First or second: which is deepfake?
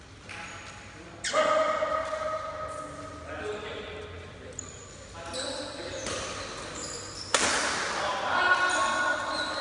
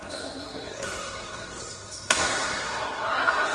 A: second